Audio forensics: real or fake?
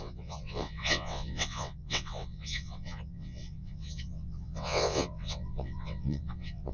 fake